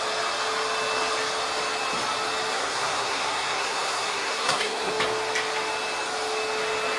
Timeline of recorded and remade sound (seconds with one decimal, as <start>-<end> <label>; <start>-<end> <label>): 0.0-2.5 recorded; 2.5-4.9 remade; 4.9-7.0 recorded